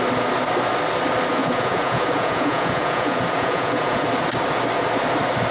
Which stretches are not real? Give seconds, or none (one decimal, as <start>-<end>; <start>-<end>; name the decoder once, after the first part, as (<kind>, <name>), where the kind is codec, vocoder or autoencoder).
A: 1.4-4.0 (vocoder, Vocos)